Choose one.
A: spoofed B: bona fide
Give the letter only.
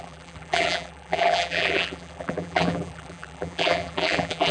A